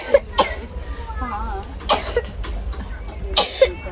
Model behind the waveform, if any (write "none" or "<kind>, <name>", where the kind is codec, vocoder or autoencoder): none